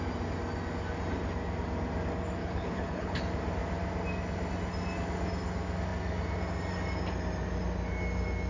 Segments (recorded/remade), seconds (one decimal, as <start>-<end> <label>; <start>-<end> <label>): 0.0-2.4 recorded; 2.4-3.2 remade; 3.2-8.5 recorded